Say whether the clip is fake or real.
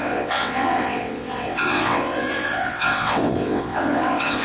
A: fake